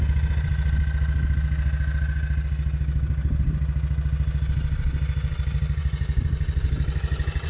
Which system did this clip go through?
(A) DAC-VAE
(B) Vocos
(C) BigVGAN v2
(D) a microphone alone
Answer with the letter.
D